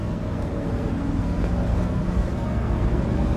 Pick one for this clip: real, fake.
fake